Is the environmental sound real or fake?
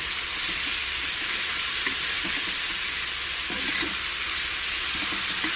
real